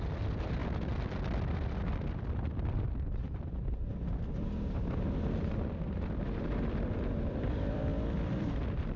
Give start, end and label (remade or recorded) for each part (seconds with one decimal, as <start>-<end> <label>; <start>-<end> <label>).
0.0-0.6 remade; 0.6-1.1 recorded; 1.1-7.9 remade; 7.9-8.4 recorded; 8.4-9.0 remade